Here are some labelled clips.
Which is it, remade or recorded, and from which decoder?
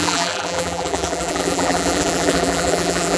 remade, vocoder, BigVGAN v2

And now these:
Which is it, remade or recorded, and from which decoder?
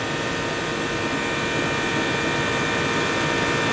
recorded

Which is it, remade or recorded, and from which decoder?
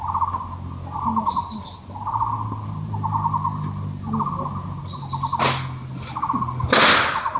recorded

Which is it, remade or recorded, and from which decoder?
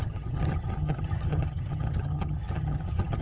remade, vocoder, HiFi-GAN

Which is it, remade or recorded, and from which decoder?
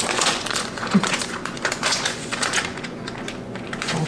remade, vocoder, Vocos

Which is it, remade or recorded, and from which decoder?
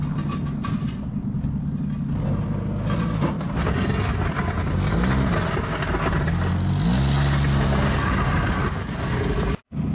recorded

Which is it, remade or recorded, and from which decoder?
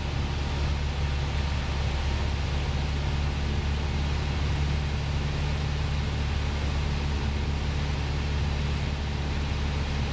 recorded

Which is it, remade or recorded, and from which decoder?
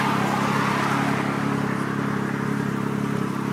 recorded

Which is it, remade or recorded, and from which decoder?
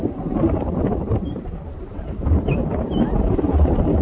remade, vocoder, BigVGAN v2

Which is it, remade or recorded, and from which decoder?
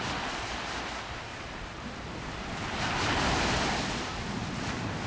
recorded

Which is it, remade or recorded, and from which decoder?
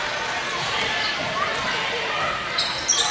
remade, vocoder, BigVGAN v2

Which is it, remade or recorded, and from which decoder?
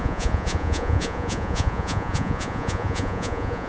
remade, vocoder, Vocos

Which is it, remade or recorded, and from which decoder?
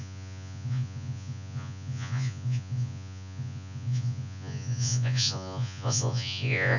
remade, vocoder, Vocos